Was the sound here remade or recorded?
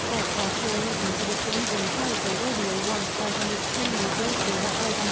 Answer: recorded